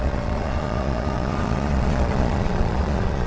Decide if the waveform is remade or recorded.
remade